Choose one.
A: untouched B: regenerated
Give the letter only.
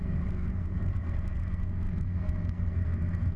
B